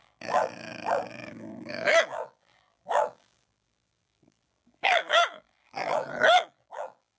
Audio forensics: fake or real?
fake